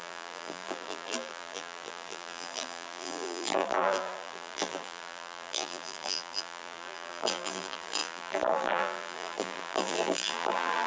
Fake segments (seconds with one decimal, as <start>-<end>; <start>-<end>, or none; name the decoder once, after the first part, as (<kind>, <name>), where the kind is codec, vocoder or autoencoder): 0.0-10.9 (vocoder, BigVGAN v2)